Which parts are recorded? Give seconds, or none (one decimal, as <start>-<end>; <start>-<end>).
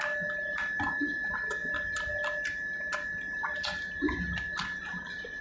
0.0-5.4